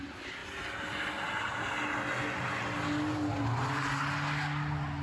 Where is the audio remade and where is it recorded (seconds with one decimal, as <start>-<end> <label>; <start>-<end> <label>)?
0.0-5.0 recorded